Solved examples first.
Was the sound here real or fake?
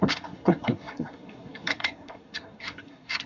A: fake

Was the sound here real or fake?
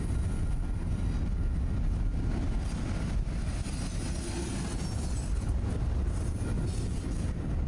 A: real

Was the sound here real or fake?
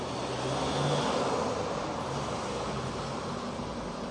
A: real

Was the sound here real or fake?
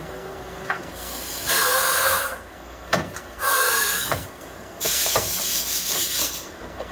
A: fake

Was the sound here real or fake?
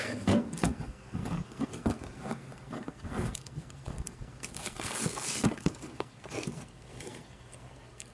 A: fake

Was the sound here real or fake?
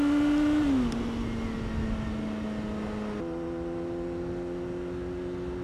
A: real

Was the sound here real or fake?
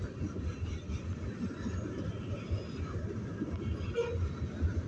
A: real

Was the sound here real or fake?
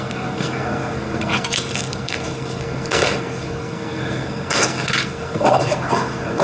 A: fake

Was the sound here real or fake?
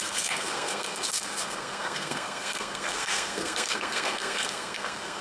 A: fake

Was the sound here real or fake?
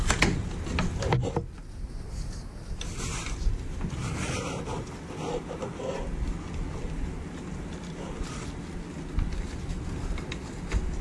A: real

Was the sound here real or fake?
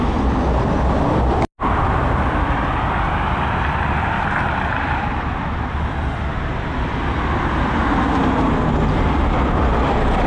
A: real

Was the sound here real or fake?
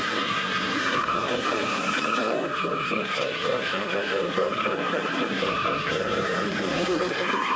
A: fake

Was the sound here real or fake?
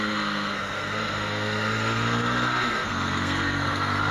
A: fake